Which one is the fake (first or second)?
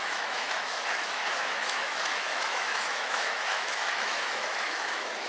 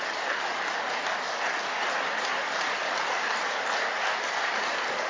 first